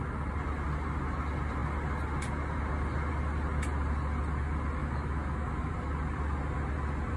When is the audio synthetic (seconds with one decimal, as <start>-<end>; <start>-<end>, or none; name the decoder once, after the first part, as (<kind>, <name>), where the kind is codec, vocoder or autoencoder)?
4.8-5.7 (autoencoder, DAC-VAE)